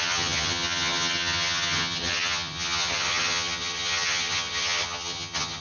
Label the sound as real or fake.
fake